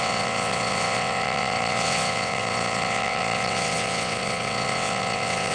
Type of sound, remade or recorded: remade